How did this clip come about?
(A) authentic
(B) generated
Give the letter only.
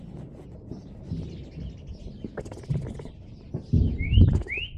A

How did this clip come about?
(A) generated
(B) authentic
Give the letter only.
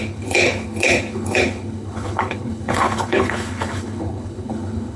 A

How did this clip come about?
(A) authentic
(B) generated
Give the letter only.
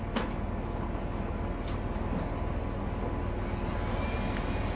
A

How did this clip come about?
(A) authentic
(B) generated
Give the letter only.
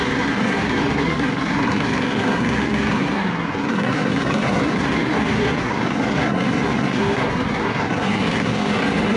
B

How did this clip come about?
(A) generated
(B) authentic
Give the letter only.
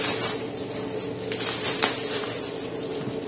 B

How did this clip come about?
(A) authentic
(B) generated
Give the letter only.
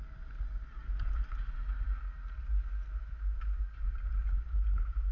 A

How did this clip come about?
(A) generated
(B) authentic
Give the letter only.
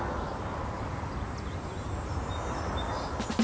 B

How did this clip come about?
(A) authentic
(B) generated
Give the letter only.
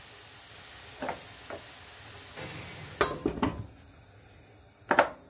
A